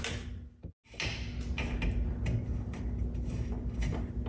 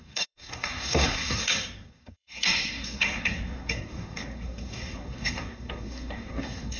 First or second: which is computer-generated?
second